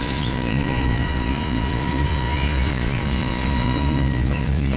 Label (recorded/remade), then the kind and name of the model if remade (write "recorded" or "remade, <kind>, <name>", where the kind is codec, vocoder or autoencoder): remade, vocoder, Vocos